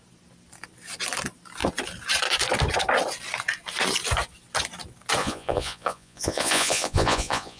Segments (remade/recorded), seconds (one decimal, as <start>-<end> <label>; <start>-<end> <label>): 0.0-5.2 recorded; 5.2-7.6 remade